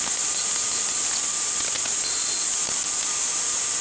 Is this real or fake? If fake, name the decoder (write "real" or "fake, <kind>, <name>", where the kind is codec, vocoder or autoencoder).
real